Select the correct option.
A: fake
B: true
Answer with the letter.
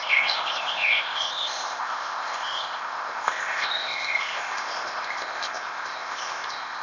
A